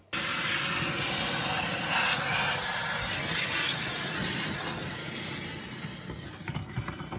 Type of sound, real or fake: real